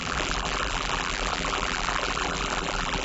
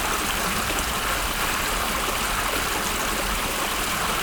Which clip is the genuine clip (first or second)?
second